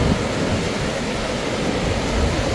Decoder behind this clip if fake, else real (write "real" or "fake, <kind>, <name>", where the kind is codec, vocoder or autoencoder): real